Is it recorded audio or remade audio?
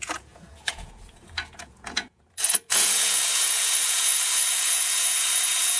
remade